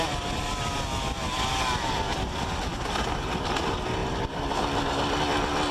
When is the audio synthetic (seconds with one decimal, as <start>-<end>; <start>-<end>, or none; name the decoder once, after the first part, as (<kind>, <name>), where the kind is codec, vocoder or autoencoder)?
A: none